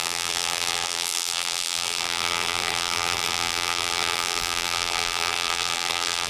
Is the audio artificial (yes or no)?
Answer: yes